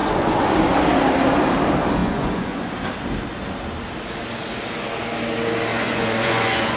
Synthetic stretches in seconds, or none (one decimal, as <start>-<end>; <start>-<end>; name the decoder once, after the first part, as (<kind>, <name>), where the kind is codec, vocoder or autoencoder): 0.0-0.5 (vocoder, Vocos); 2.0-2.7; 5.7-6.8